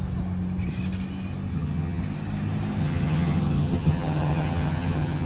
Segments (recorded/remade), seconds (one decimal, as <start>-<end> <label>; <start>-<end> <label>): 0.0-1.5 recorded; 1.5-2.0 remade; 2.0-2.8 recorded; 2.8-5.3 remade